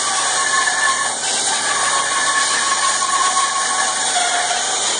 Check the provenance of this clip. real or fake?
fake